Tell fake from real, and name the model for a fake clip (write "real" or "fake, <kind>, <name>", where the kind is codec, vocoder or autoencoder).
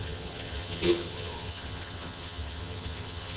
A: fake, vocoder, HiFi-GAN